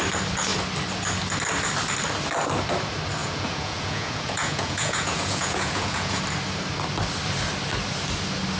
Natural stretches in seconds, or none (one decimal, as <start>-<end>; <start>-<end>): 0.0-3.2; 6.2-8.6